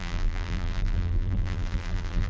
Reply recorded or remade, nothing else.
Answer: remade